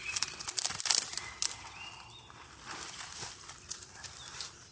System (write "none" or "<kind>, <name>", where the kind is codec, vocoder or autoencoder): none